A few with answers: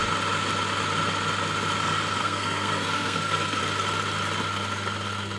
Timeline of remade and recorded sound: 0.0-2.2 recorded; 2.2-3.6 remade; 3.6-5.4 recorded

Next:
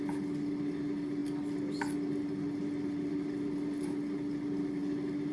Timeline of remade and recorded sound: 0.0-5.3 recorded